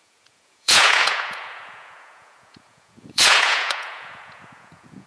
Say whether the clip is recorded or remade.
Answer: remade